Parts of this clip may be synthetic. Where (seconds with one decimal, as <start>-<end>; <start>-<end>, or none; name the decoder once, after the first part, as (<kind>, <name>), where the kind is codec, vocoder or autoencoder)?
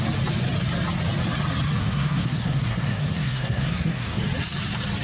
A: 1.8-4.2 (codec, SNAC)